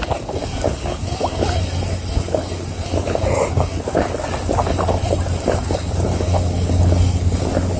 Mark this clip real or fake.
real